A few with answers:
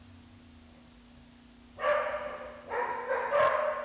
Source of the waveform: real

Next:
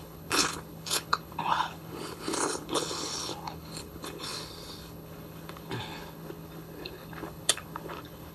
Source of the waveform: fake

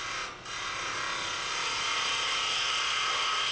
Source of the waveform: real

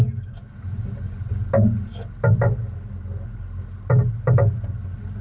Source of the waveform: real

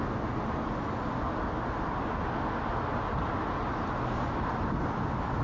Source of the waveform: real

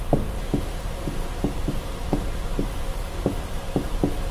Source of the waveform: fake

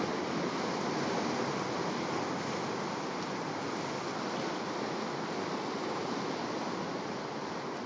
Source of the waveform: real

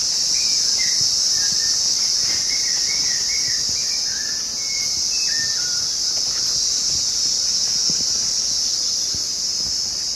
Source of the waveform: real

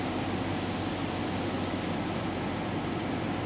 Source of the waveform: real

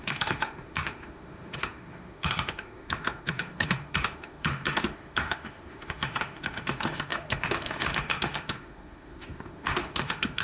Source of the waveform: fake